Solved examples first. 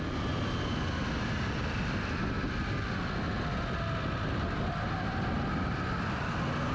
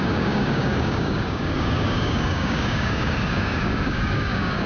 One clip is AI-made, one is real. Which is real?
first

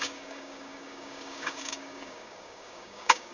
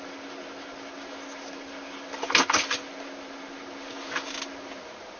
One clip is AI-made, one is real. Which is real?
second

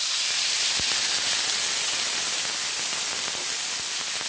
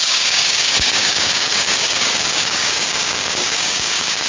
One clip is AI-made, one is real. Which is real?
first